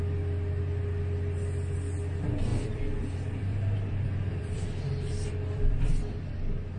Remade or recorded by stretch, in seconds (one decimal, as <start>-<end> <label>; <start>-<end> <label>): 0.0-2.5 recorded; 2.5-6.3 remade; 6.3-6.8 recorded